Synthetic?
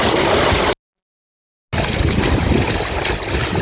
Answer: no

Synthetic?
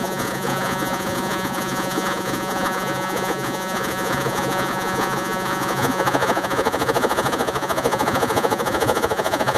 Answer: yes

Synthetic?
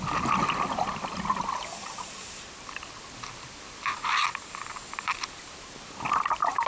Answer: no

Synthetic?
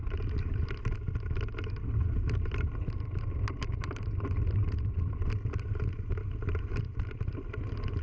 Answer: no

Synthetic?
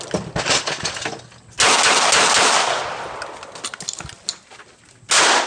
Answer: no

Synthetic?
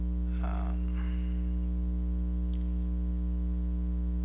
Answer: no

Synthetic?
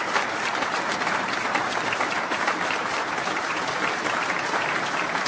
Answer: no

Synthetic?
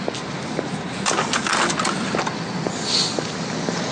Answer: no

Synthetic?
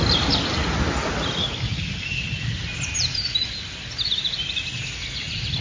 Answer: no